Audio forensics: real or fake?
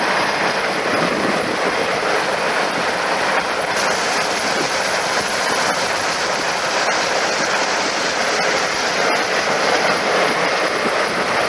fake